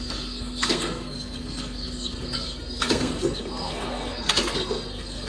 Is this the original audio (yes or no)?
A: no